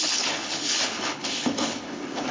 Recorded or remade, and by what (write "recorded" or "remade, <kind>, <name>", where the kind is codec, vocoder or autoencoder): remade, codec, HILCodec